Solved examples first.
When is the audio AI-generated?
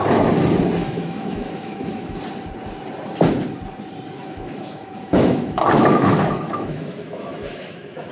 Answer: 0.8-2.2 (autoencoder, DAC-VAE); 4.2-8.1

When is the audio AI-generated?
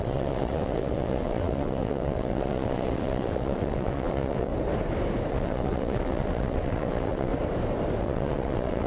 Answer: 0.0-4.5 (vocoder, WaveNeXt); 5.3-7.3; 8.0-8.9